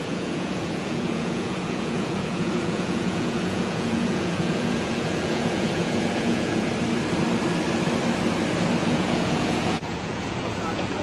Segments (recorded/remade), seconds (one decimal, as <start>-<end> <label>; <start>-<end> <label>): 0.0-6.7 remade; 6.7-8.8 recorded; 8.8-11.0 remade